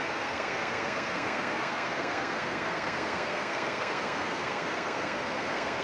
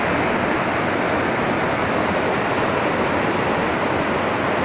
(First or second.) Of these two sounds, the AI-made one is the first